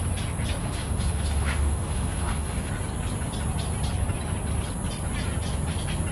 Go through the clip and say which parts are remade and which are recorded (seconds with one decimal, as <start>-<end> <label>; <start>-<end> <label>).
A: 0.0-0.6 recorded; 0.6-2.7 remade; 2.7-6.1 recorded